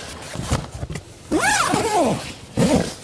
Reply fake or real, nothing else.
real